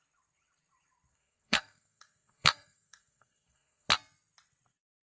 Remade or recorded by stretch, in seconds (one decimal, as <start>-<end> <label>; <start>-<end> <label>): 0.0-1.1 recorded; 1.1-3.9 remade; 3.9-5.0 recorded